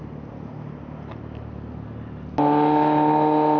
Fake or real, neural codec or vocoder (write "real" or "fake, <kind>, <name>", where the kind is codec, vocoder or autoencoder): real